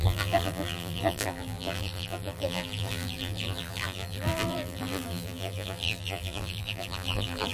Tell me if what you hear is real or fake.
fake